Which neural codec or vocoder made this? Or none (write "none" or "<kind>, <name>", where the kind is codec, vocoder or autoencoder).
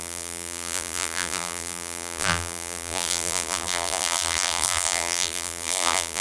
vocoder, BigVGAN v2